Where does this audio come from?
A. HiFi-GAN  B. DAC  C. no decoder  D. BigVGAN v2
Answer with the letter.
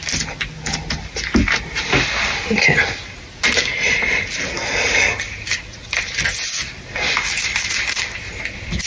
C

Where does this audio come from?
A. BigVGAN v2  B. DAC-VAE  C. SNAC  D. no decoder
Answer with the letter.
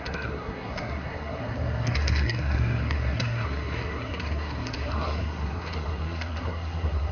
C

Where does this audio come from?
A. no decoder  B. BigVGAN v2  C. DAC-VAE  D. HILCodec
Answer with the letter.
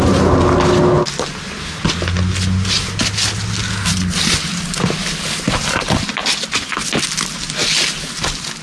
A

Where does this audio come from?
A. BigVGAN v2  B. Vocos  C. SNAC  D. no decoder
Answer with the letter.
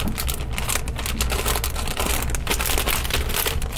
D